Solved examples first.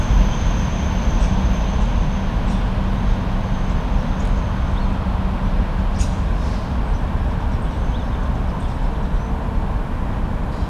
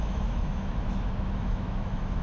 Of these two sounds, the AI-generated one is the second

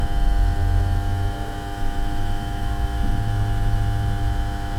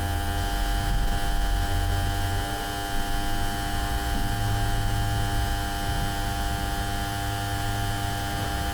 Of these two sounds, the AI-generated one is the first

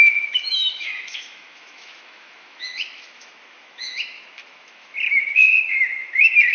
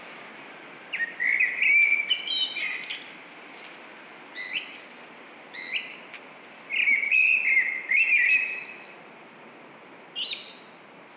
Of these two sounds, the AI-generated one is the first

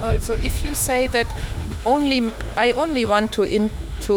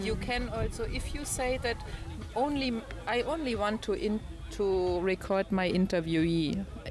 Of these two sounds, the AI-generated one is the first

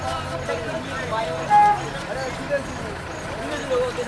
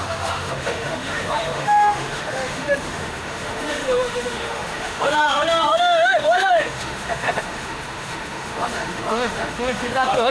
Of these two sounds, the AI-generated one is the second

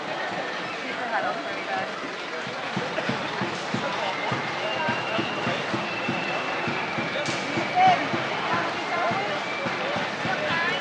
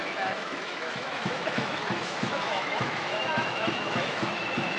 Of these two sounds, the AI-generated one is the second